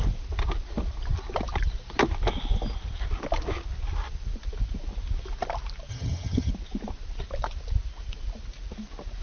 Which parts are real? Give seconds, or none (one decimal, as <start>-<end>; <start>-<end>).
0.0-5.9; 6.5-9.2

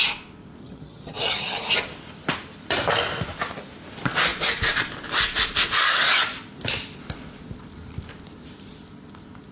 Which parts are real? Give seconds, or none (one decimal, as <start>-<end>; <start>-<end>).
0.0-0.6; 1.7-9.5